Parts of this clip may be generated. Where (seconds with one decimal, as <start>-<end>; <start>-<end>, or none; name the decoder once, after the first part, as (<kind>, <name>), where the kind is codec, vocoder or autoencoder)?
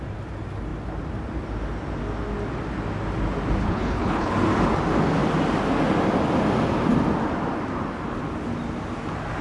3.6-4.3 (codec, HILCodec)